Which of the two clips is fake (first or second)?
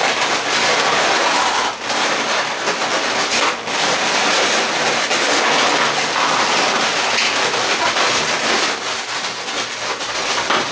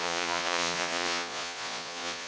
second